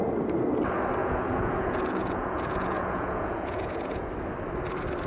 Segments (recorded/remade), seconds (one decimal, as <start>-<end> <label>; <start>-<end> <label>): 0.0-1.0 recorded; 1.0-4.1 remade; 4.1-5.1 recorded